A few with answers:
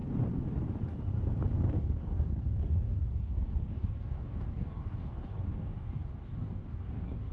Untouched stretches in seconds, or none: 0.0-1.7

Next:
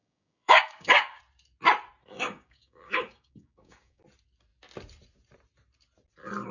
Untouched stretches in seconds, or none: 1.2-2.0; 4.0-6.5

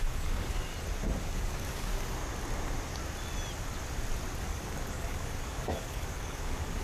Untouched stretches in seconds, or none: 0.7-1.2; 1.9-4.4

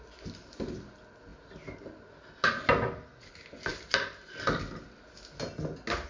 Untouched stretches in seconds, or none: 0.0-6.1